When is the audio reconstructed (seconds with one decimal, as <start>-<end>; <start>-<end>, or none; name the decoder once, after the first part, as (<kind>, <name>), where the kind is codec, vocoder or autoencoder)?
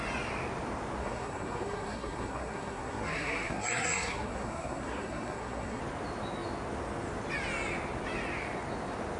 1.0-5.8 (codec, SNAC)